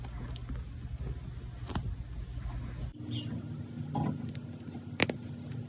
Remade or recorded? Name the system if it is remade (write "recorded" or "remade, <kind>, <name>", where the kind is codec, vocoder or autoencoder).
recorded